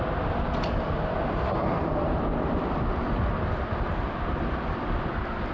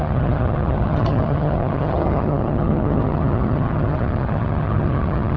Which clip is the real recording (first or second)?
first